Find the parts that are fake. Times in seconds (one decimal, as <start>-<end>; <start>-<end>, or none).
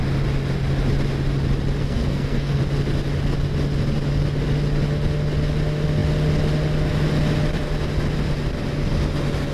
1.8-2.6